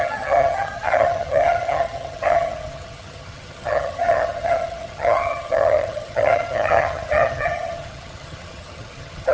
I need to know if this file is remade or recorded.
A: remade